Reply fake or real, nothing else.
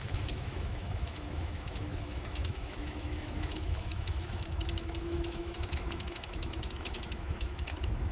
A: fake